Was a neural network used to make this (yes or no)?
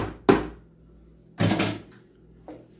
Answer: no